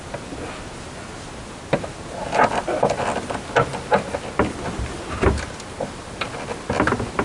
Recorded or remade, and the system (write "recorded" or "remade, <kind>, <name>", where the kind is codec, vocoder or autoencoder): recorded